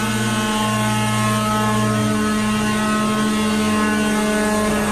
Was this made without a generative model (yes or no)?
yes